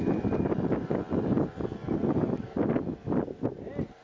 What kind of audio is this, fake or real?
real